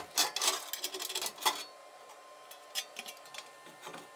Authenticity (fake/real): real